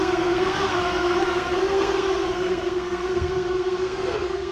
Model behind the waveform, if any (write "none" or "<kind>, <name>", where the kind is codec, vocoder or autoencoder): codec, SNAC